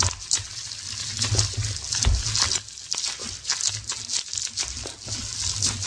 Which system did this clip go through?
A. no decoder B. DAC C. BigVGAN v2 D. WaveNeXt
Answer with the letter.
A